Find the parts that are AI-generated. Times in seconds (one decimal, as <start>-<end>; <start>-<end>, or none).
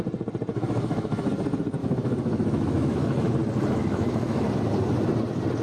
0.5-1.3; 1.8-3.3; 3.8-4.4